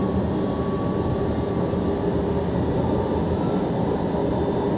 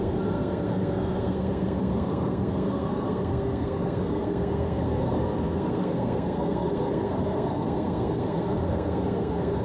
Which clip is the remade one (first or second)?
second